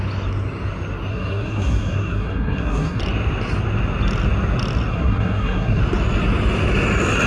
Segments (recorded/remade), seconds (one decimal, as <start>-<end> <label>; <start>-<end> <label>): 0.0-1.1 recorded; 1.1-3.0 remade; 3.0-4.9 recorded; 4.9-5.8 remade; 5.8-7.3 recorded